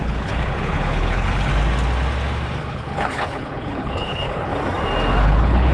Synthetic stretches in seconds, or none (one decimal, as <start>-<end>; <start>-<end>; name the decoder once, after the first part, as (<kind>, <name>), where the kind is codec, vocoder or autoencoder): 0.0-1.5 (codec, HILCodec); 2.6-4.5; 5.2-5.7